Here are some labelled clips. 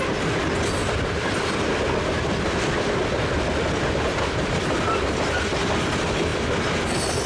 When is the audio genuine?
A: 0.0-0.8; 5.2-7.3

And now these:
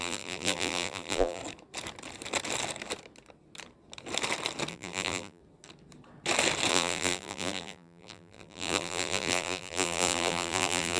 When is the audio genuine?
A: 1.4-4.7; 5.4-6.7

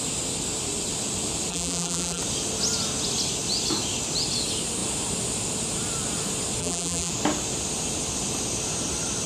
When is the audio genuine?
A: 0.0-1.5; 2.2-6.6; 7.1-9.3

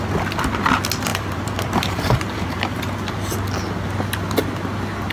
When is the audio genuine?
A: 0.0-1.1; 3.3-5.1